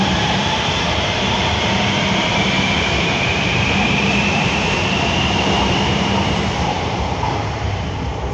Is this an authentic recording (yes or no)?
no